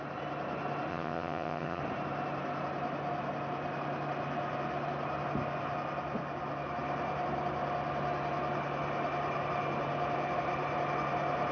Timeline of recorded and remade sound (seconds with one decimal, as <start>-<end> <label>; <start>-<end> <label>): 0.0-0.9 recorded; 0.9-1.8 remade; 1.8-11.5 recorded